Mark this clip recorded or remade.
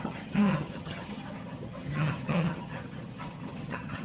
remade